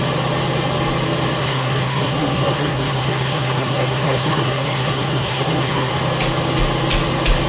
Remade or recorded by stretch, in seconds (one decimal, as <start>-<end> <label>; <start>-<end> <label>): 0.0-1.4 recorded; 1.4-5.9 remade; 5.9-7.5 recorded